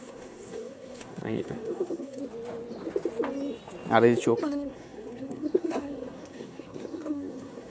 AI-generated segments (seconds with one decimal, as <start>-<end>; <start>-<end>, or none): 0.0-2.2; 4.4-7.7